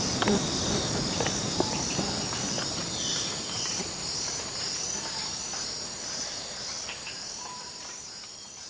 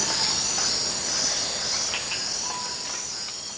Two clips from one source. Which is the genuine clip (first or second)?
second